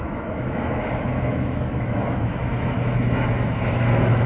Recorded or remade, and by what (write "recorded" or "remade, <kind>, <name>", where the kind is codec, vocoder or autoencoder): remade, autoencoder, DAC-VAE